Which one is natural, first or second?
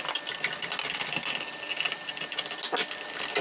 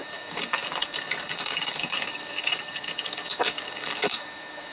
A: first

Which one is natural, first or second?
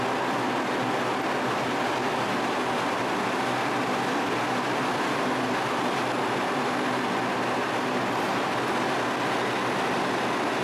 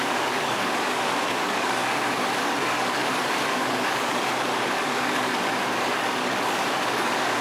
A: first